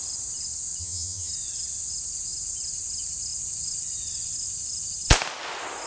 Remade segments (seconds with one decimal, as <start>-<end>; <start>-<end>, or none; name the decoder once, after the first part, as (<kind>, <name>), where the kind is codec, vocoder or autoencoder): 0.8-1.3 (vocoder, HiFi-GAN)